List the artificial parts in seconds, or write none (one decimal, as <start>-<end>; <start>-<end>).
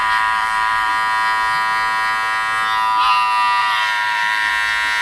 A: 0.0-0.9; 3.6-4.5